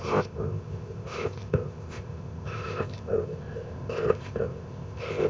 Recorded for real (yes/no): no